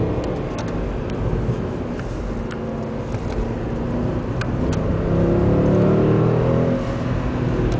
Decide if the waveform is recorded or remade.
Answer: recorded